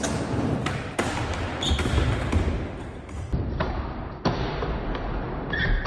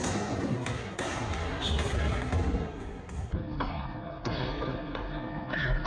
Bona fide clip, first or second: first